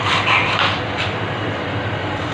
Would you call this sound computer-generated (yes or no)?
no